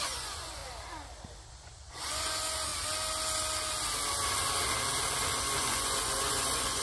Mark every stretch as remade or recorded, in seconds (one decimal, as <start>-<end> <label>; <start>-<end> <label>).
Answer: 0.0-0.6 remade; 0.6-1.5 recorded; 1.5-2.7 remade; 2.7-5.4 recorded; 5.4-6.8 remade